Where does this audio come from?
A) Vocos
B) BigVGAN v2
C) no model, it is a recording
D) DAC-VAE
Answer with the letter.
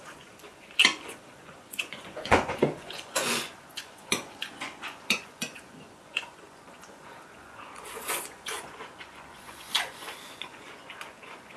A